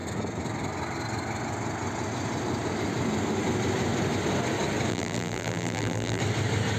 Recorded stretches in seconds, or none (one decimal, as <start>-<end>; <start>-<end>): 0.0-4.9; 6.2-6.8